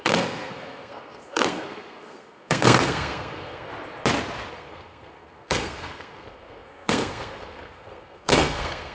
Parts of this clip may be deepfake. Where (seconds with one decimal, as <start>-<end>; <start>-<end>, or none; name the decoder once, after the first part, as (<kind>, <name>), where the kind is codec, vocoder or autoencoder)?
0.0-3.7 (codec, SNAC); 4.5-8.9